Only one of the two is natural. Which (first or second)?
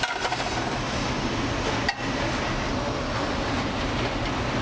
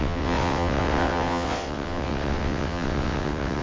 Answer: first